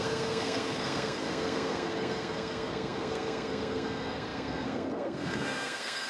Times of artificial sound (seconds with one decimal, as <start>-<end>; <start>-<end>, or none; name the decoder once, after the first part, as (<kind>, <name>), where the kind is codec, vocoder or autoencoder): 0.0-6.1 (codec, SNAC)